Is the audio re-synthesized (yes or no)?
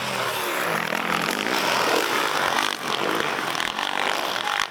no